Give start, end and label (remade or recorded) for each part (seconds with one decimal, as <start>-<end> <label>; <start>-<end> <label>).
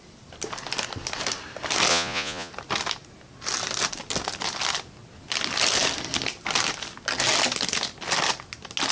0.0-1.9 recorded; 1.9-2.5 remade; 2.5-8.9 recorded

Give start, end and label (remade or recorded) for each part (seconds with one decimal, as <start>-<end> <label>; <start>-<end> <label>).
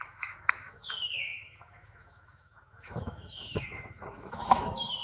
0.0-5.0 remade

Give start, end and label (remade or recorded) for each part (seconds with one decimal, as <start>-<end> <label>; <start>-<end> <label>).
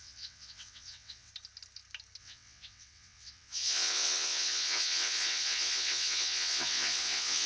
0.0-1.3 remade; 1.3-2.2 recorded; 2.2-7.5 remade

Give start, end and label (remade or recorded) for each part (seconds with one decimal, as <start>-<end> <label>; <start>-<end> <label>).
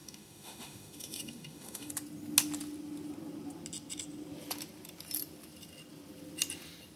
0.0-1.9 remade; 1.9-7.0 recorded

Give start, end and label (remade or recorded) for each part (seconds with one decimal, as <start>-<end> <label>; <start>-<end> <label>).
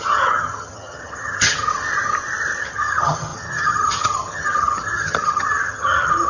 0.0-1.7 remade; 1.7-2.6 recorded; 2.6-6.3 remade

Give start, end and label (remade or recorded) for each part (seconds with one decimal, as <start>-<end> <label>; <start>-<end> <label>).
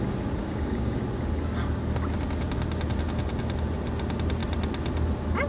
0.0-0.4 recorded; 0.4-1.0 remade; 1.0-5.5 recorded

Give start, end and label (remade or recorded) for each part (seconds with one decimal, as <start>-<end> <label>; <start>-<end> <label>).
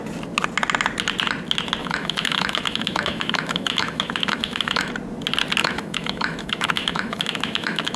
0.0-1.8 recorded; 1.8-4.9 remade; 4.9-5.6 recorded; 5.6-8.0 remade